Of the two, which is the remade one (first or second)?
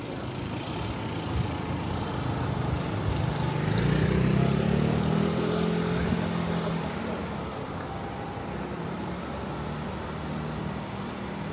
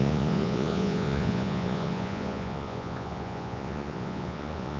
second